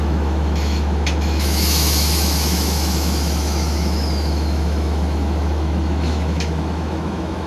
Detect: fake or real fake